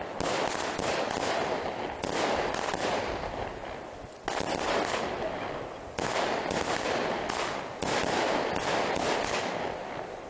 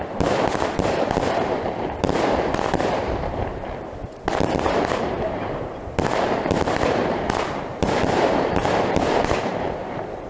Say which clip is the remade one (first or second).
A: second